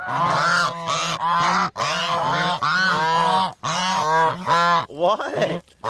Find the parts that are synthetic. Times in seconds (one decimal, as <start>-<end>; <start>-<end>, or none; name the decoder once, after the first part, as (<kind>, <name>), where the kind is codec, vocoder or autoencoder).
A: none